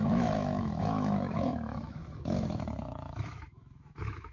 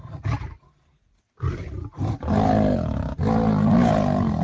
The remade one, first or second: first